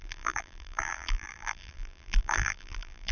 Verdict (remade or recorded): remade